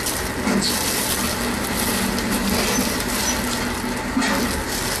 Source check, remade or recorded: recorded